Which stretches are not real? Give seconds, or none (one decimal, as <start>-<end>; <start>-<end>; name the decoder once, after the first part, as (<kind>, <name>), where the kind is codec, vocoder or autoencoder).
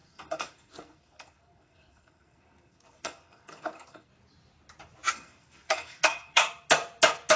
0.0-4.1 (codec, SNAC); 5.1-6.4